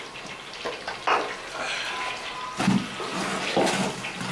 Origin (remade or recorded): recorded